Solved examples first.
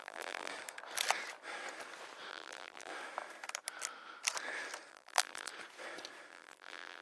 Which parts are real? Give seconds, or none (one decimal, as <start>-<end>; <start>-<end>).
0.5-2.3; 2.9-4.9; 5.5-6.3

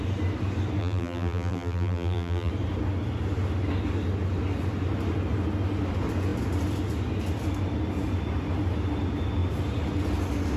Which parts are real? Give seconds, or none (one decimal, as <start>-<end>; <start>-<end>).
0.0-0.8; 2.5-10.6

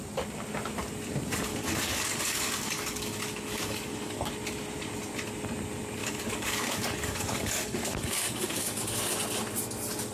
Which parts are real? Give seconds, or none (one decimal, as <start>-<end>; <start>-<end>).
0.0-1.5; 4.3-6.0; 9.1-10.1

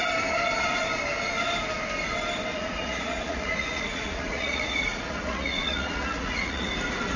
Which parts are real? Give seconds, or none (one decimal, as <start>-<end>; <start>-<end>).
0.0-2.5; 6.7-7.2

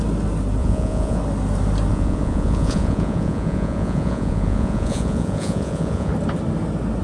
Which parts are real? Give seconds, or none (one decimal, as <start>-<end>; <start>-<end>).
0.0-0.6; 1.2-1.9; 6.1-7.0

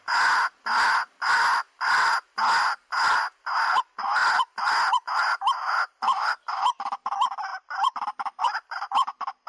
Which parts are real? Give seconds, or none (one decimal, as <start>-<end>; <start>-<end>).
0.0-9.5

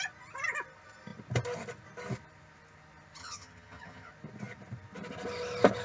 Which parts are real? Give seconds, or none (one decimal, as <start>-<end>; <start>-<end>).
0.0-3.2; 4.1-5.8